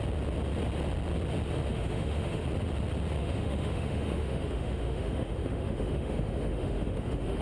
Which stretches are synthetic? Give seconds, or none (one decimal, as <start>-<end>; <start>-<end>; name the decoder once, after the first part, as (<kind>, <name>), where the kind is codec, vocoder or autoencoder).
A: 1.7-2.4 (autoencoder, DAC-VAE); 3.2-7.4